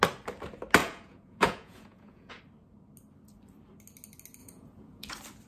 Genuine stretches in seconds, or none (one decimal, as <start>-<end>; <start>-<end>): 0.0-0.8; 2.4-4.4; 5.1-5.5